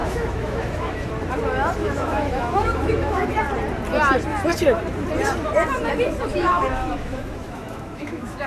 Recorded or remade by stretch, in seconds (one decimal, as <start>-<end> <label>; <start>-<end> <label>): 0.0-1.1 remade; 1.1-1.8 recorded; 1.8-3.3 remade; 3.3-6.3 recorded; 6.3-8.5 remade